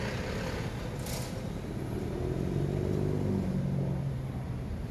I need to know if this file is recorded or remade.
recorded